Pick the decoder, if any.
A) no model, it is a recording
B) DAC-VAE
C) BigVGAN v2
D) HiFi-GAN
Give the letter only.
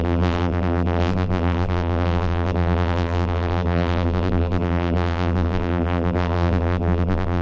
C